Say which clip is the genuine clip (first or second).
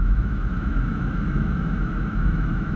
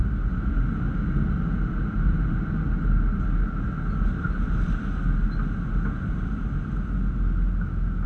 second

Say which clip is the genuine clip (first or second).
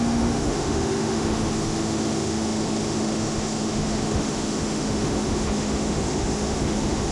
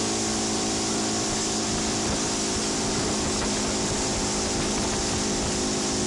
second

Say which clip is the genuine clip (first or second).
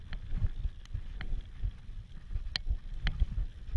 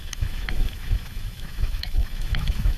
first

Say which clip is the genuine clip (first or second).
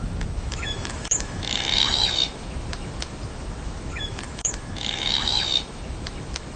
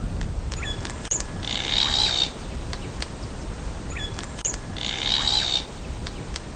second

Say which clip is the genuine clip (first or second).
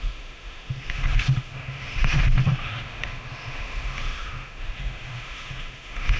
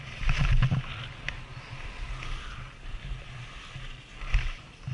second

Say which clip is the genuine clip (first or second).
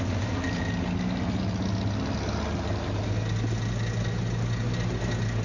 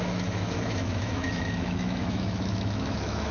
first